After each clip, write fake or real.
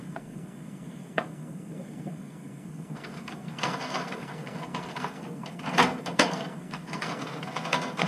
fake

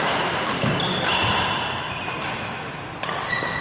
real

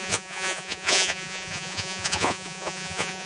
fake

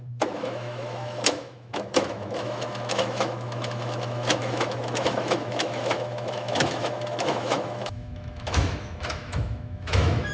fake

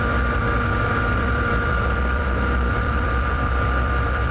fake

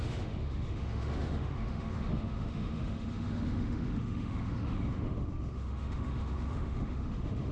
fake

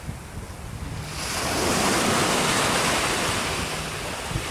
real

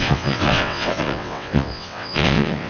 fake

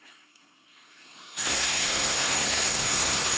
fake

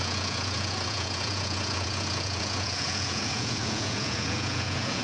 fake